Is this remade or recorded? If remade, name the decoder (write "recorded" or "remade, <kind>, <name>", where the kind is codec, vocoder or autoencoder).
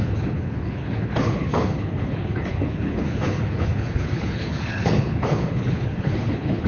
remade, codec, HILCodec